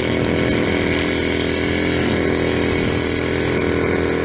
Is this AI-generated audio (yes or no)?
no